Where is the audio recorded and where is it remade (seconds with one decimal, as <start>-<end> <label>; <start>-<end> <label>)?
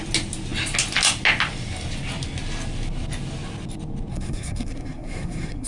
0.0-4.1 recorded; 4.1-5.7 remade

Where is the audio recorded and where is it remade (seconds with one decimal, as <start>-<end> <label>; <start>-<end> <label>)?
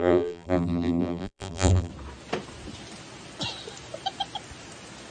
0.0-1.9 remade; 1.9-5.1 recorded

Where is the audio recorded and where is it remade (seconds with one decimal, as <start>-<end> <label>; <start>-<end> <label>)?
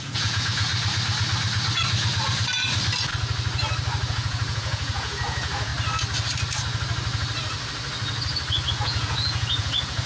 0.0-0.7 remade; 0.7-4.1 recorded; 4.1-5.7 remade; 5.7-8.7 recorded; 8.7-10.1 remade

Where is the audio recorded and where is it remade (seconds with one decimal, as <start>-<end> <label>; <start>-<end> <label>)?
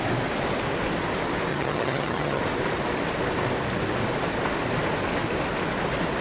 0.0-1.5 recorded; 1.5-2.4 remade; 2.4-6.2 recorded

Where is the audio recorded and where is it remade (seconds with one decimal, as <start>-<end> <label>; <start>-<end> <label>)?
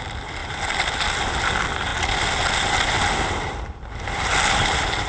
0.0-5.1 recorded